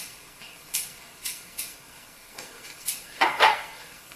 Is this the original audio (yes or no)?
no